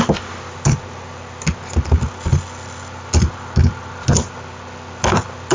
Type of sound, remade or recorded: recorded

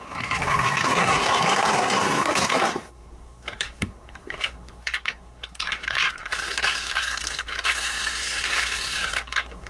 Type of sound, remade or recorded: remade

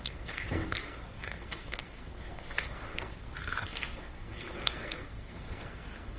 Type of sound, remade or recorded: remade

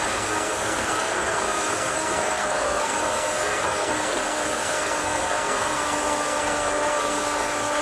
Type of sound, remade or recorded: remade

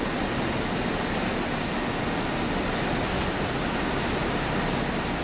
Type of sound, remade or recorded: recorded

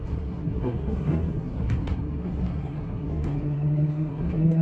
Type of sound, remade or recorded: remade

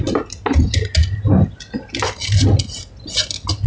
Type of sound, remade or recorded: recorded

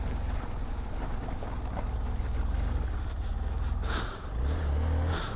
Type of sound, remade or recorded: recorded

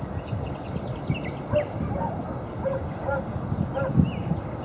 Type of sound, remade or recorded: recorded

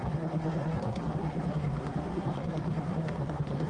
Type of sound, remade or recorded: remade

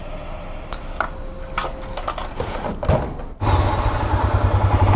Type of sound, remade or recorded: recorded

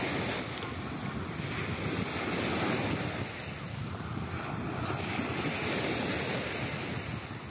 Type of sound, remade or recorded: recorded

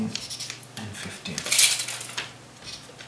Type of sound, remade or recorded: recorded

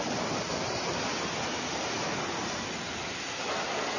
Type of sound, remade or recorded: recorded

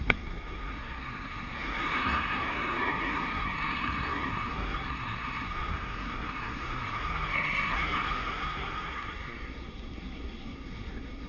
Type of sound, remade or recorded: remade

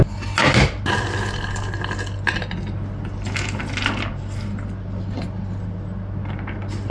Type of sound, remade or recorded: recorded